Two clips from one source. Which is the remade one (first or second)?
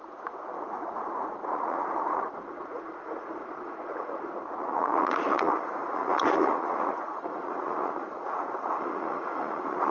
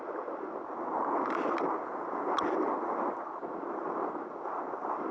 first